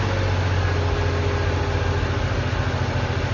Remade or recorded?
recorded